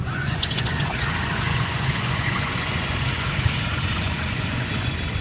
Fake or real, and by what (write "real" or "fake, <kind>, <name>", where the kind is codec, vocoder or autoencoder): fake, vocoder, Vocos